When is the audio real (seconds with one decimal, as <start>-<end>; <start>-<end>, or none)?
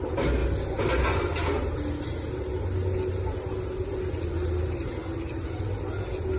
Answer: 0.0-6.4